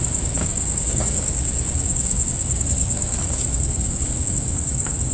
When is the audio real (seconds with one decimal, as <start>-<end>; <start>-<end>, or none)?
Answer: none